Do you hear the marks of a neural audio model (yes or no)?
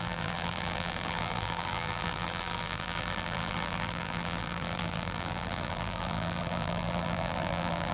yes